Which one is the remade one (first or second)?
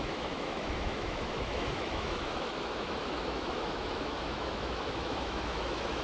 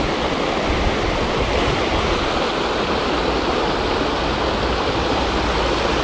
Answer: first